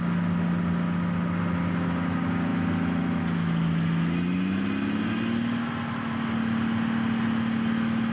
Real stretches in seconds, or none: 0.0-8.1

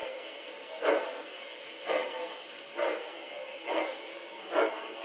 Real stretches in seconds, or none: none

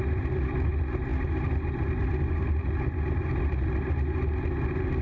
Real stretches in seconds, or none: 0.0-5.0

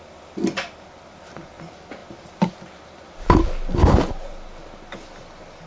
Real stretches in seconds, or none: 0.0-5.7

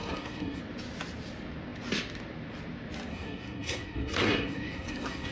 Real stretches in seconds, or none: 0.6-3.1